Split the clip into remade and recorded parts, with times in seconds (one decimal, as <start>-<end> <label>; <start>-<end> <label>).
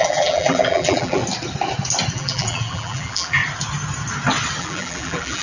0.0-1.2 remade; 1.2-2.1 recorded; 2.1-3.4 remade; 3.4-4.6 recorded; 4.6-5.4 remade